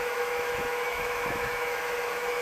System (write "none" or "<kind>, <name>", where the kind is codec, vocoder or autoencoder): autoencoder, DAC-VAE